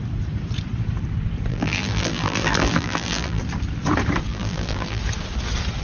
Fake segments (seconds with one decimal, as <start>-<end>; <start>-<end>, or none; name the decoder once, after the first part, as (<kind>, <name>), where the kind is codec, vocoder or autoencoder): 1.5-3.4 (vocoder, BigVGAN v2); 4.3-5.0